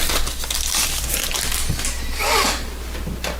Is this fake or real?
real